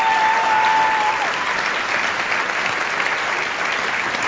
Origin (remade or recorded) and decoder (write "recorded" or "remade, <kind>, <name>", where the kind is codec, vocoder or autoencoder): recorded